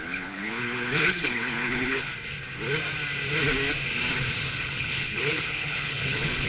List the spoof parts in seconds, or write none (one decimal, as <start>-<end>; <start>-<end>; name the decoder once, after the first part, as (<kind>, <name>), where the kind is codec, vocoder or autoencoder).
0.0-2.1 (codec, HILCodec); 4.5-6.5